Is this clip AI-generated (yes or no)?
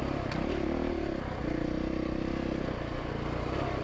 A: no